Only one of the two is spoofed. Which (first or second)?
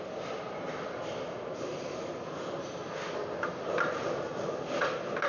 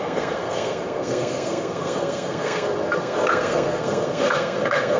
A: second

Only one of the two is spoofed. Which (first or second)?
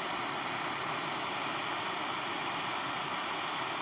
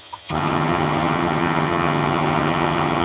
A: second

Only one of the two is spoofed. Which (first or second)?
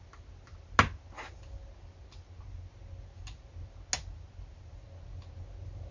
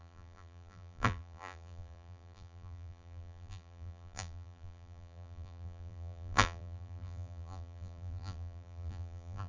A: second